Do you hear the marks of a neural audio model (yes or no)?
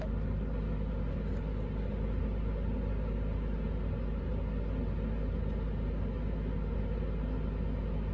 no